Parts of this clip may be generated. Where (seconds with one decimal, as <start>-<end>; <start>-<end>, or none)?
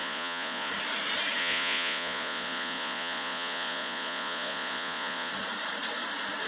0.0-0.7; 1.4-5.3